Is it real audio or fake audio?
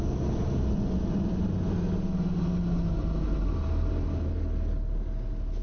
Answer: real